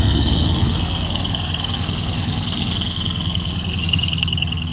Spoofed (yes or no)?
yes